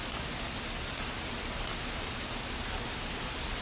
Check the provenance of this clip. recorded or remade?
recorded